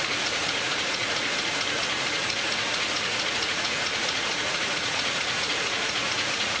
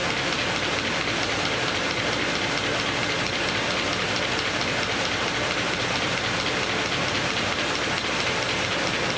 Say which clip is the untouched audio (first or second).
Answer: second